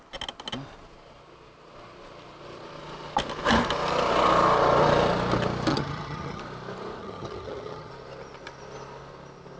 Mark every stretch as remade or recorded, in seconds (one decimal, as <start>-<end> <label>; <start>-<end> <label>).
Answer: 0.0-5.7 recorded; 5.7-6.4 remade; 6.4-7.0 recorded; 7.0-7.9 remade; 7.9-9.6 recorded